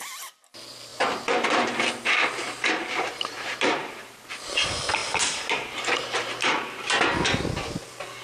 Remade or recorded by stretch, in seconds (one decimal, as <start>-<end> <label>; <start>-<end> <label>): 0.0-0.9 recorded; 0.9-4.3 remade; 4.3-5.0 recorded; 5.0-6.8 remade; 6.8-8.2 recorded